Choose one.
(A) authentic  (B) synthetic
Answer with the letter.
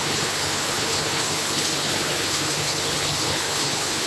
B